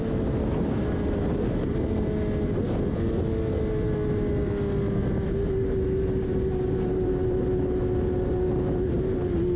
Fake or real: real